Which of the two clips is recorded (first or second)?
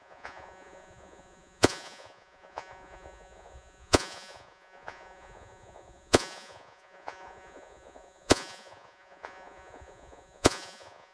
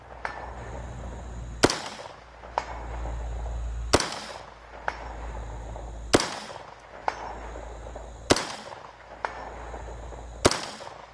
second